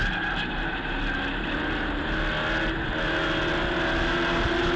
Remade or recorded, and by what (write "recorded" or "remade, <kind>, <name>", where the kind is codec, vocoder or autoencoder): recorded